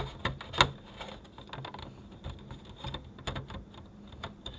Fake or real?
real